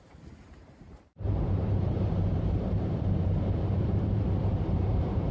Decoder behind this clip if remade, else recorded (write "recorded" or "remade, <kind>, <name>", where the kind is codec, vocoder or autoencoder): remade, vocoder, BigVGAN v2